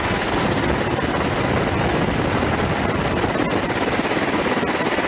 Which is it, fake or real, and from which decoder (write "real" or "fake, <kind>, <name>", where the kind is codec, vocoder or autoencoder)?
real